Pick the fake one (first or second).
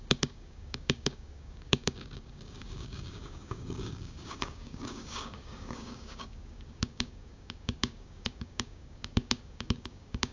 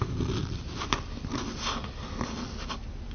first